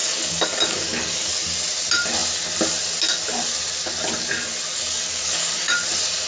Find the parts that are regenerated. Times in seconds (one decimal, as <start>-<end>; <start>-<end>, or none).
0.0-1.3; 4.7-5.7